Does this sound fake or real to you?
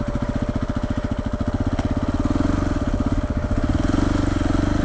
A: real